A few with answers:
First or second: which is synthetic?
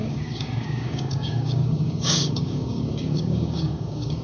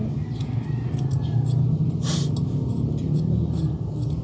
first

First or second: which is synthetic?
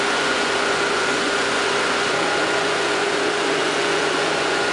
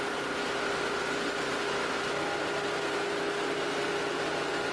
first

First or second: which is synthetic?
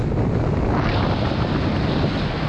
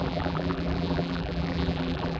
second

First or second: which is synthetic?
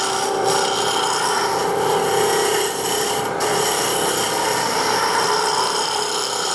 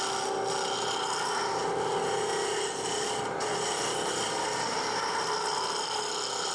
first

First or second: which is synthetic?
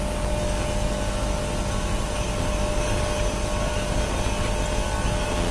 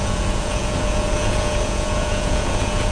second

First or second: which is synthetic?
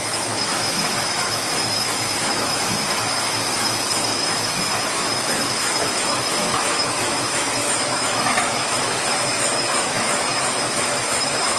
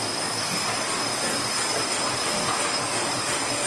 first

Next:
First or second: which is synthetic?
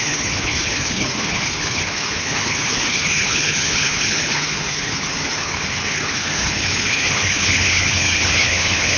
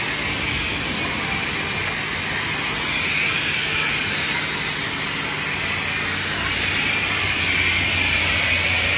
first